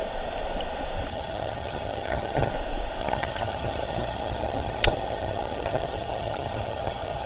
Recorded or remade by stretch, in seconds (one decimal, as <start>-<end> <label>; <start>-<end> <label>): 0.0-1.1 recorded; 1.1-2.5 remade; 2.5-3.0 recorded; 3.0-7.3 remade